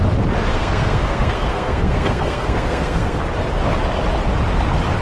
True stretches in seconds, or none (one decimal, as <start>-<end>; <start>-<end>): 0.0-0.5; 3.2-5.0